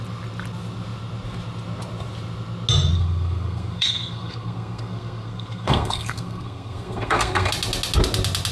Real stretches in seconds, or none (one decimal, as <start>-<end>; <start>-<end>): 0.0-2.9; 7.5-8.5